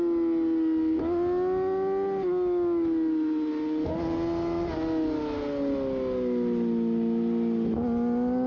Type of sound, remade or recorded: recorded